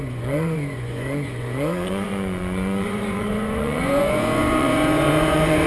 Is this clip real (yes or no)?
no